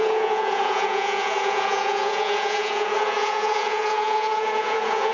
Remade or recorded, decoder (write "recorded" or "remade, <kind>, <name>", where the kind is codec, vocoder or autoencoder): remade, vocoder, Vocos